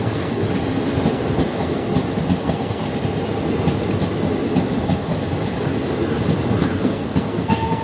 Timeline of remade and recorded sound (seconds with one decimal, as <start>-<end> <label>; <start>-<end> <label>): 0.0-0.4 remade; 0.4-1.1 recorded; 1.1-1.9 remade; 1.9-2.4 recorded; 2.4-2.8 remade; 2.8-6.6 recorded; 6.6-7.8 remade